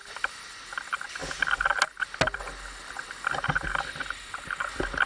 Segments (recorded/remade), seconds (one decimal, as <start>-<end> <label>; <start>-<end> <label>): 0.0-5.1 recorded